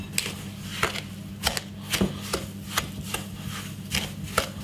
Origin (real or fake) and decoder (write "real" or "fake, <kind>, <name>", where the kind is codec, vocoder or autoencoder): real